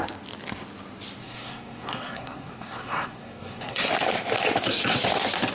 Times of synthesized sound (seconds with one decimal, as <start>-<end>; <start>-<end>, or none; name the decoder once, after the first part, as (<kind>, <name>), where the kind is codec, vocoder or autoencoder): 1.2-3.9 (codec, SNAC)